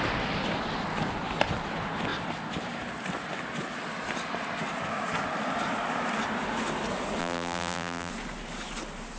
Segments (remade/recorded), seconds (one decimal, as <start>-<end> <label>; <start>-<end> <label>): 0.0-7.2 recorded; 7.2-8.1 remade; 8.1-9.2 recorded